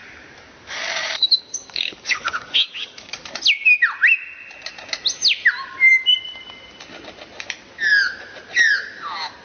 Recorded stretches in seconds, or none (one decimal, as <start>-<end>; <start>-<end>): 3.4-9.4